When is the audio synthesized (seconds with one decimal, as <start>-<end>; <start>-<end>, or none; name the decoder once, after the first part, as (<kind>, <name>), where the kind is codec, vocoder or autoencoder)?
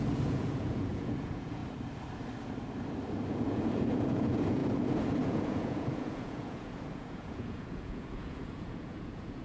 0.0-1.6 (vocoder, Vocos); 3.3-9.4